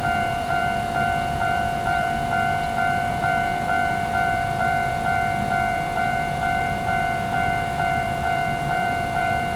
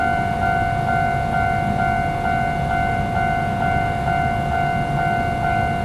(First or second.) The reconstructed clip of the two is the first